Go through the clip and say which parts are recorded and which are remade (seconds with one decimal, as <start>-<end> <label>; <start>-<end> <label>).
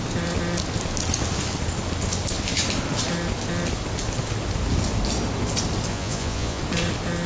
0.0-5.9 recorded; 5.9-6.6 remade; 6.6-7.3 recorded